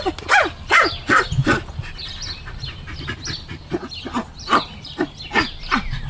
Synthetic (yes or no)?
no